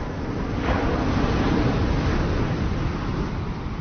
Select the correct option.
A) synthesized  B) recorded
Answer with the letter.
B